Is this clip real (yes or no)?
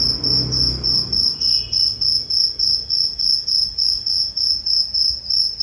yes